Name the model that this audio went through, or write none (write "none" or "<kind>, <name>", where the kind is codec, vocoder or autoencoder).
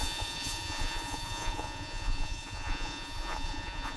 vocoder, Vocos